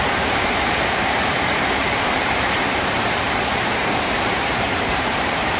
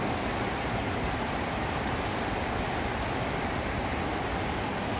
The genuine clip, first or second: second